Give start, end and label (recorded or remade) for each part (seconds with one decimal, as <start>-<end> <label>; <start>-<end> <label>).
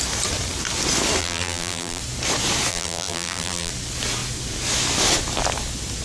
0.0-1.2 recorded; 1.2-2.0 remade; 2.0-2.7 recorded; 2.7-3.7 remade; 3.7-6.0 recorded